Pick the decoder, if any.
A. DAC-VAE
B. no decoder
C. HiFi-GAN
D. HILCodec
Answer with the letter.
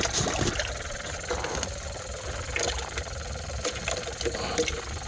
B